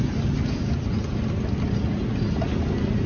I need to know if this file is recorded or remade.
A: recorded